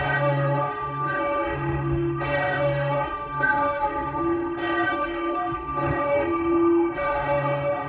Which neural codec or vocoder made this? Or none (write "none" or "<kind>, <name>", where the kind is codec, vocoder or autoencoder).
autoencoder, DAC-VAE